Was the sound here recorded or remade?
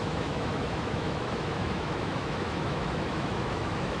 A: remade